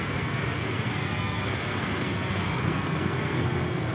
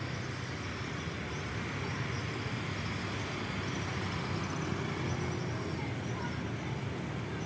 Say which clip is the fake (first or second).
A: first